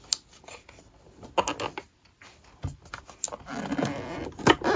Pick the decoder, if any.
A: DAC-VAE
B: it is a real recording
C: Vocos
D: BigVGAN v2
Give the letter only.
B